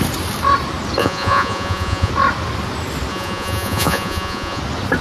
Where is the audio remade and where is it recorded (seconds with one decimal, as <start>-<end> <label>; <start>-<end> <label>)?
0.0-1.0 recorded; 1.0-2.1 remade; 2.1-3.1 recorded; 3.1-4.6 remade; 4.6-5.0 recorded